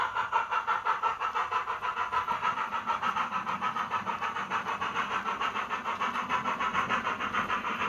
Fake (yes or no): no